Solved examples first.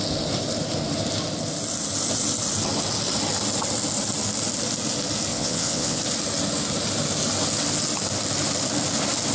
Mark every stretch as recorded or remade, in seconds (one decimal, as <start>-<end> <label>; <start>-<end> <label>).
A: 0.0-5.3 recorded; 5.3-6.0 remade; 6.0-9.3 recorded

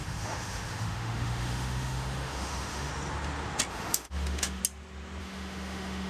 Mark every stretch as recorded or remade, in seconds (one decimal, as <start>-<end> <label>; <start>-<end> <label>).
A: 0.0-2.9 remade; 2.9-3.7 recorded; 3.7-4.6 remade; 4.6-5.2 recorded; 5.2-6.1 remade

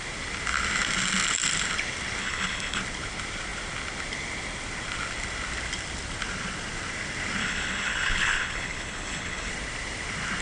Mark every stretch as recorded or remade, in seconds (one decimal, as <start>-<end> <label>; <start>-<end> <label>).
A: 0.0-2.2 recorded; 2.2-2.8 remade; 2.8-7.4 recorded; 7.4-9.5 remade; 9.5-10.4 recorded